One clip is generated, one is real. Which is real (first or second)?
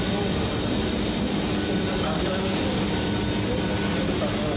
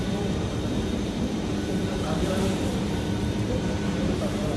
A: first